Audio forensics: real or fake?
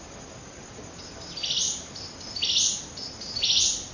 real